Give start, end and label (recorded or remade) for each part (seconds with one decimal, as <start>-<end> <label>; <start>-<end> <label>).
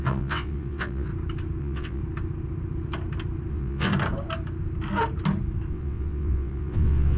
0.0-1.1 remade; 1.1-1.6 recorded; 1.6-2.0 remade; 2.0-3.5 recorded; 3.5-3.9 remade; 3.9-5.7 recorded; 5.7-7.2 remade